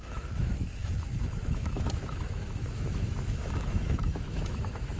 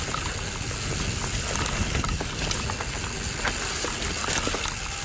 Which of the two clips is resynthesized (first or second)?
first